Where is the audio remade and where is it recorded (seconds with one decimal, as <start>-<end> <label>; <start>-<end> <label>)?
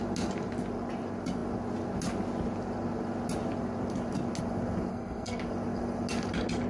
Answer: 0.0-4.9 recorded; 4.9-5.4 remade; 5.4-6.7 recorded